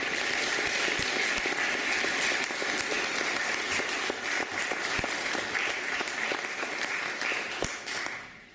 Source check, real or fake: real